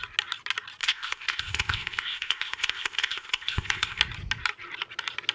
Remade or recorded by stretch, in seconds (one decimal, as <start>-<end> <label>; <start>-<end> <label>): 0.0-0.8 recorded; 0.8-4.0 remade; 4.0-5.3 recorded